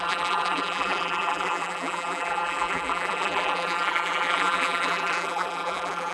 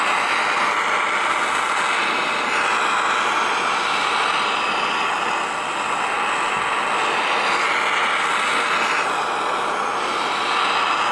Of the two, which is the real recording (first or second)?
second